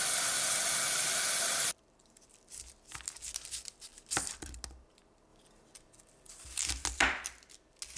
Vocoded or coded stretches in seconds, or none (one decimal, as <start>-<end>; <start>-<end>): 1.7-3.2; 3.9-4.6; 5.3-6.7